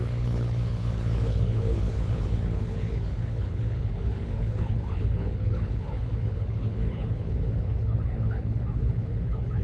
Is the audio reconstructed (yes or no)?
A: yes